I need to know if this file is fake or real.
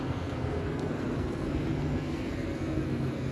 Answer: fake